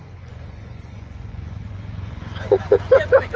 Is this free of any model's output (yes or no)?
no